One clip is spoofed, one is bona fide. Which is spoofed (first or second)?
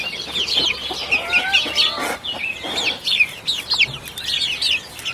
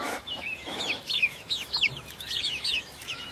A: second